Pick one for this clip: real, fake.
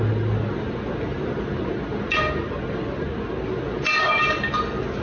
real